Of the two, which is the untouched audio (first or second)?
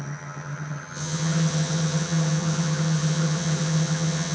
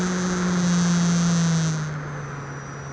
second